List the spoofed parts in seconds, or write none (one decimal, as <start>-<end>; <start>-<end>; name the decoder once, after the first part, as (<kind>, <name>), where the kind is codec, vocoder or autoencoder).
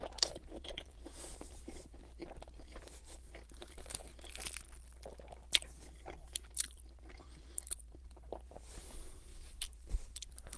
0.0-4.0 (vocoder, BigVGAN v2); 6.2-10.6